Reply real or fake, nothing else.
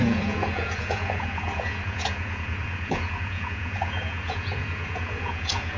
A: fake